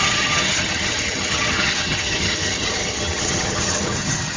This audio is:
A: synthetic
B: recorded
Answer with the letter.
A